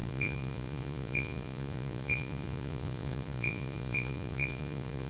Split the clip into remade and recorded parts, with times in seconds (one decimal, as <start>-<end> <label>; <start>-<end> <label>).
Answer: 0.0-5.1 remade